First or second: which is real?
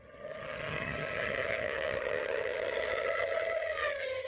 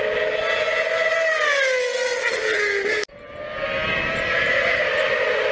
second